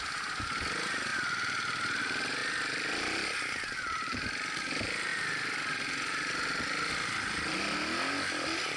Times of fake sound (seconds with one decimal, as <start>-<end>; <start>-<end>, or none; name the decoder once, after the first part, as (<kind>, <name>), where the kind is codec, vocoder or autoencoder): 1.1-2.0 (vocoder, BigVGAN v2); 2.4-4.6